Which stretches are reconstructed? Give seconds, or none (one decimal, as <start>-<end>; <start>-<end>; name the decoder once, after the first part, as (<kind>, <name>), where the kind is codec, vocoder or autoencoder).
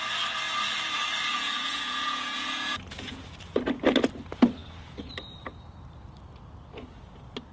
1.3-3.2 (vocoder, Vocos)